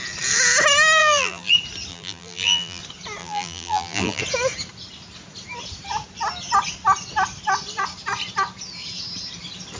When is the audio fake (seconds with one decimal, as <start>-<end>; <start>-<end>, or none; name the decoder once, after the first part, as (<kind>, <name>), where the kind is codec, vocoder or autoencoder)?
1.0-1.5 (vocoder, BigVGAN v2); 1.9-2.8; 3.2-4.2